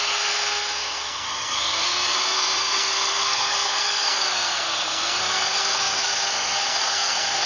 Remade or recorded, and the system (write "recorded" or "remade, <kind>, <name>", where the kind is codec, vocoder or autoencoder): remade, codec, SNAC